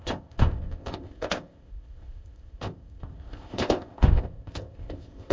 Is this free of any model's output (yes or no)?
no